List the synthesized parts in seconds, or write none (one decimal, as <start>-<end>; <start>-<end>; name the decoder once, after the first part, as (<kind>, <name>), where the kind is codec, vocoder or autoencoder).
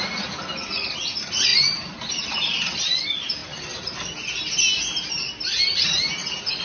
none